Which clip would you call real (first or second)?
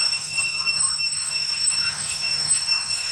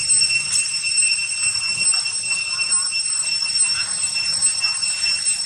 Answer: second